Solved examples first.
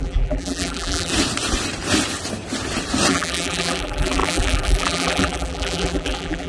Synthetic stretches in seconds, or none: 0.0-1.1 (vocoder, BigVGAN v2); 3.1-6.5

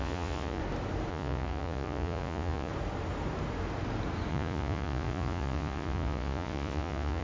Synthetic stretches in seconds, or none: 0.0-0.6 (vocoder, Vocos); 1.1-2.7; 4.3-7.2

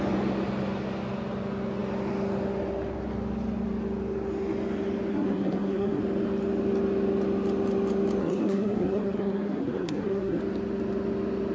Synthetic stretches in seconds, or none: 5.1-6.0 (codec, SNAC); 8.2-10.4

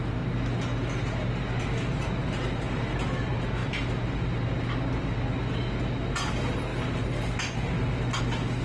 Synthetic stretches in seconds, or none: none

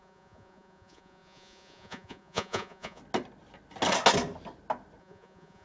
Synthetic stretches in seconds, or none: 0.0-3.0 (vocoder, Vocos); 5.0-5.6